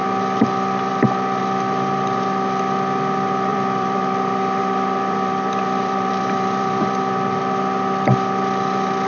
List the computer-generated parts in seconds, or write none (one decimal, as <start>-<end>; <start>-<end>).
3.5-7.4